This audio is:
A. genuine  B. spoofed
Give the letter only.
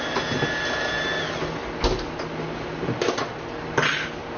A